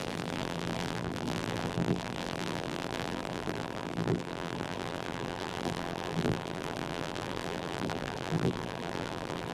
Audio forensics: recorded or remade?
remade